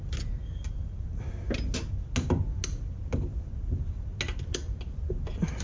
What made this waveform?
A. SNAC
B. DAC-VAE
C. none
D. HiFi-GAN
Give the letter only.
C